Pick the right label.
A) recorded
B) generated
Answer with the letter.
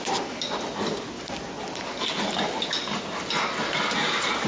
A